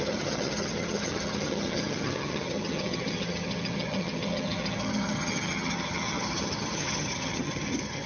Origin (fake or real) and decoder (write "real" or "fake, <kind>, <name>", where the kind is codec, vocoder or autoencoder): fake, vocoder, HiFi-GAN